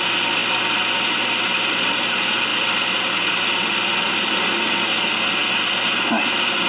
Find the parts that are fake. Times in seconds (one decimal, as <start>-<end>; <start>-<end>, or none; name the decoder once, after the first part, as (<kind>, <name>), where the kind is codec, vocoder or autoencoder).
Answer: none